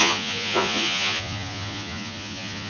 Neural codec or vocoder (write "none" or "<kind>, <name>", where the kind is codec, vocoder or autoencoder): vocoder, Vocos